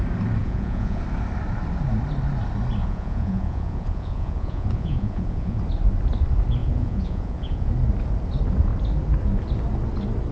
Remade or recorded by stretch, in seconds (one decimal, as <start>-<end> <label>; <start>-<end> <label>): 0.0-0.4 recorded; 0.4-1.0 remade; 1.0-2.8 recorded; 2.8-5.6 remade; 5.6-6.6 recorded; 6.6-7.7 remade; 7.7-10.3 recorded